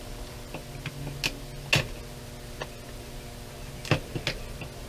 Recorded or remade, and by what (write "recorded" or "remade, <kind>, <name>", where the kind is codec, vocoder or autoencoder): recorded